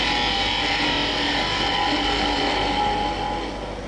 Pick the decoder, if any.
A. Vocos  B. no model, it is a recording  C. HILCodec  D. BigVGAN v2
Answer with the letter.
B